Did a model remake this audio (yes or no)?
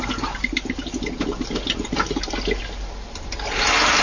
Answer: no